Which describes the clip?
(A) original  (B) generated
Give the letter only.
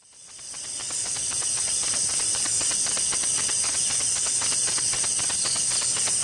A